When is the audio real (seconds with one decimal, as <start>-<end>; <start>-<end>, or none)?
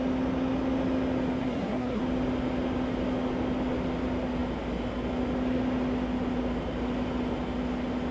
0.0-1.4; 2.0-8.1